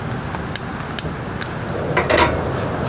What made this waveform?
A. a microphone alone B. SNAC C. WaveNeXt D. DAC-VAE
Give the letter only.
A